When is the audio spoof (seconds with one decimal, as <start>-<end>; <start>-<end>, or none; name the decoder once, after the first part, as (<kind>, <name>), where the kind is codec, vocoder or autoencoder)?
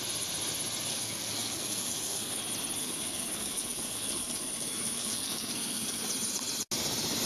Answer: 0.9-2.4 (codec, SNAC); 2.8-6.0